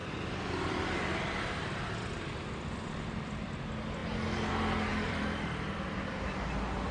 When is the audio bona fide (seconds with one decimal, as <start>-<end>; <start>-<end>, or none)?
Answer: 3.6-4.9; 6.5-6.9